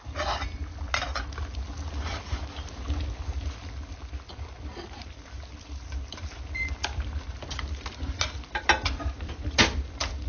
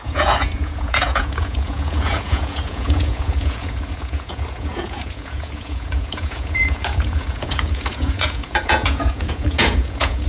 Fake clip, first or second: second